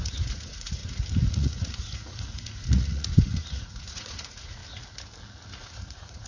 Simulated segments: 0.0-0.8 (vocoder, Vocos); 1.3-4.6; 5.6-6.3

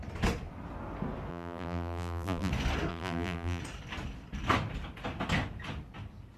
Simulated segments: 1.3-2.5 (vocoder, BigVGAN v2); 2.9-3.6

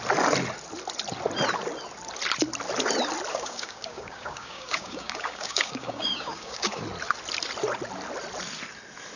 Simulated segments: 3.3-6.8 (codec, DAC)

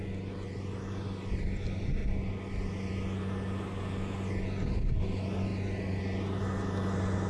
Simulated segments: none

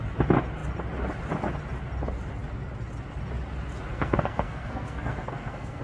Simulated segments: 3.9-5.8 (codec, SNAC)

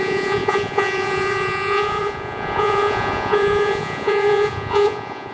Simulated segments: 0.0-5.3 (vocoder, Vocos)

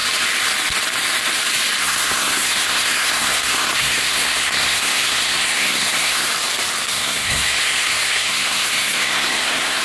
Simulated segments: 1.8-6.3 (codec, SNAC); 6.9-9.8

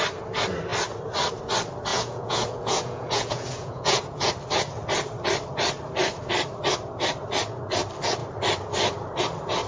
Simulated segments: 1.9-4.3 (vocoder, Vocos)